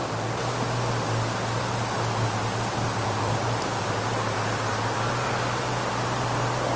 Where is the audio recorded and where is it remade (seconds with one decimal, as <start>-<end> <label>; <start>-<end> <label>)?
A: 0.0-6.8 recorded